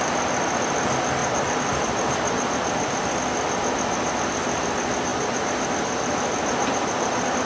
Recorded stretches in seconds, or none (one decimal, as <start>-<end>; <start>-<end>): 0.0-1.2; 3.2-7.5